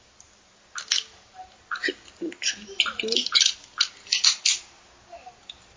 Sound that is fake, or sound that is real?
real